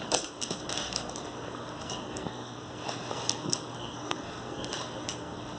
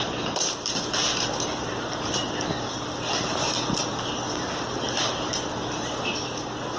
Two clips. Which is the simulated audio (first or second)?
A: first